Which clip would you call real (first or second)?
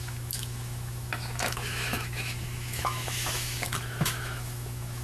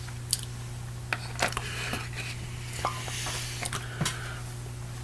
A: second